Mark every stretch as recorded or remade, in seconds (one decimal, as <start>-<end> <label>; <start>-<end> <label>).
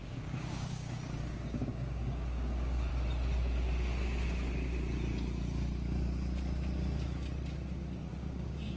0.0-2.9 remade; 2.9-8.1 recorded; 8.1-8.8 remade